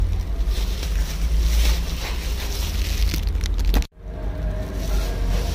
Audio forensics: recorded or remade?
recorded